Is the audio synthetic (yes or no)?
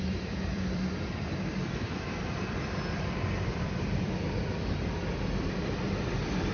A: yes